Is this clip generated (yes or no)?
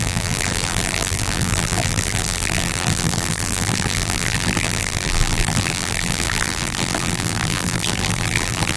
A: yes